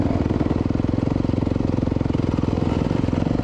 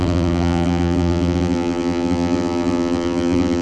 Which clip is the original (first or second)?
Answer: first